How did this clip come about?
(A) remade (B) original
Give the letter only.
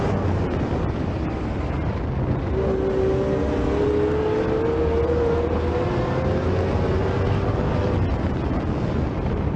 B